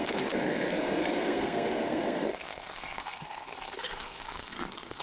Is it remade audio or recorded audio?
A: remade